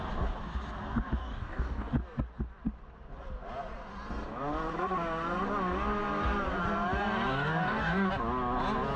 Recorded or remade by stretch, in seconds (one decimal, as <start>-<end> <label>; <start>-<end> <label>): 0.0-1.2 recorded; 1.2-1.9 remade; 1.9-7.3 recorded; 7.3-8.1 remade; 8.1-9.0 recorded